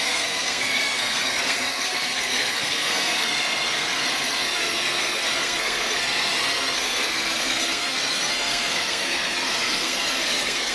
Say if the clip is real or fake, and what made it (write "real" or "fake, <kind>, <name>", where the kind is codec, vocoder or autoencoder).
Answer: fake, codec, SNAC